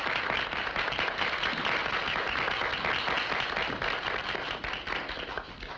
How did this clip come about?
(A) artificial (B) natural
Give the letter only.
B